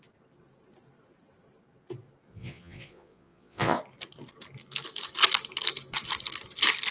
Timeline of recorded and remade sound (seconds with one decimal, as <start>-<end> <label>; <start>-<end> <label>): 0.0-2.3 recorded; 2.3-3.8 remade; 3.8-6.9 recorded